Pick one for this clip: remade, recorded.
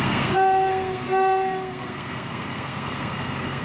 remade